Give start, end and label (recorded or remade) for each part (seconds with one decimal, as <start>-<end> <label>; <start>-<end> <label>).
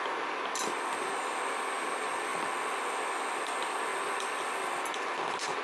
0.0-5.6 recorded